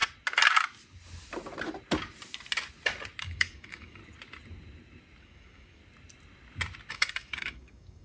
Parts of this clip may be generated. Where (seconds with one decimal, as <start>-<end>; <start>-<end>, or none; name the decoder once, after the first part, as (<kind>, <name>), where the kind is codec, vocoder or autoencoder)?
3.2-4.0 (codec, DAC); 5.2-5.8; 6.9-8.0